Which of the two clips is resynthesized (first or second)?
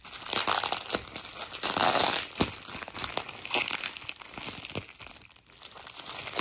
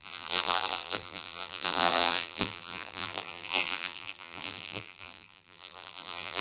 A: second